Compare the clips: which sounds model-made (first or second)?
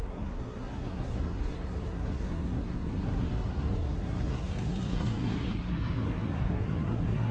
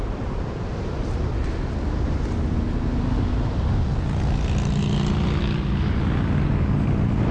first